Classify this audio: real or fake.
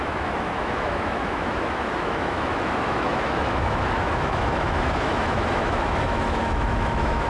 fake